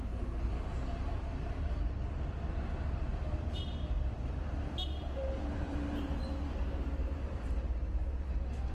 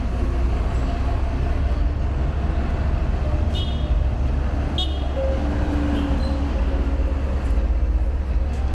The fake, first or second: first